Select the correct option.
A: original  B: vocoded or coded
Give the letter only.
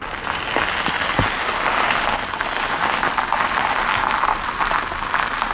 A